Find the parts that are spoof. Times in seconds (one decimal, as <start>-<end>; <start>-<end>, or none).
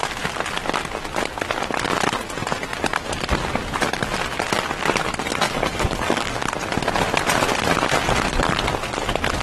5.3-6.4